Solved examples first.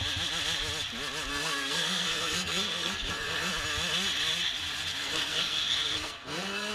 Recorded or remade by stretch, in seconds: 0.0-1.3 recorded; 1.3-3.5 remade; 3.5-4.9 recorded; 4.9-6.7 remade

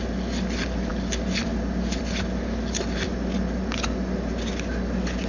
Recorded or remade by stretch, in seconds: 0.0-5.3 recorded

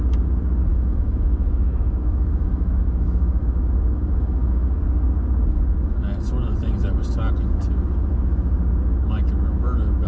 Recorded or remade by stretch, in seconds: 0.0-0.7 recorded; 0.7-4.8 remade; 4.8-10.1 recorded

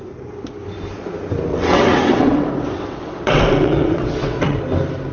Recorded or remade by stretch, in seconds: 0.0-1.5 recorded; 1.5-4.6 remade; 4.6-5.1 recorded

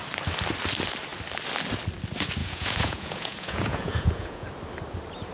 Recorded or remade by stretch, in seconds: 0.0-2.4 recorded; 2.4-4.5 remade; 4.5-5.3 recorded